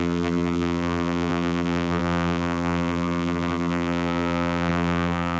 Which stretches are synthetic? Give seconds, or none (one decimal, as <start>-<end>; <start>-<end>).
0.0-5.4